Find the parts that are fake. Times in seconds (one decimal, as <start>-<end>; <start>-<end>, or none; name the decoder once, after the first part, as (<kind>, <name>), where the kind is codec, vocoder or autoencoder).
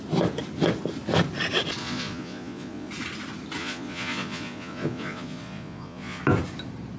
1.8-2.9 (vocoder, Vocos); 3.6-6.2